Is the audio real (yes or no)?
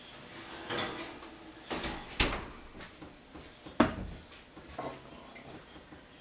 yes